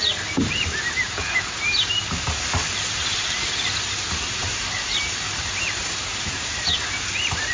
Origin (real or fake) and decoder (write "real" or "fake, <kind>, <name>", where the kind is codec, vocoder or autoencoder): fake, vocoder, BigVGAN v2